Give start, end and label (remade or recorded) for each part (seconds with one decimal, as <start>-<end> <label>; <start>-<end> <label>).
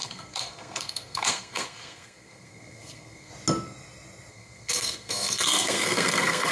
0.0-3.3 remade; 3.3-4.3 recorded; 4.3-6.5 remade